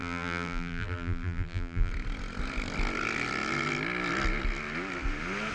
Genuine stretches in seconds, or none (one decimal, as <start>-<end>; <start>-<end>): 1.9-5.5